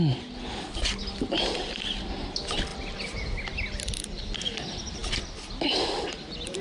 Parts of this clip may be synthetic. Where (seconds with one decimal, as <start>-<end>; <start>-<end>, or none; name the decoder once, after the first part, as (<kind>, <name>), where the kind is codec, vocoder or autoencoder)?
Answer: none